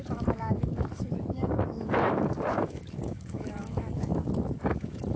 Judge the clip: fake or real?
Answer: fake